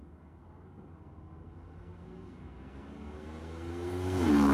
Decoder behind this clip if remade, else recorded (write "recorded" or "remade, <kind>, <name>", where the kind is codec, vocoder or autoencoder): remade, codec, SNAC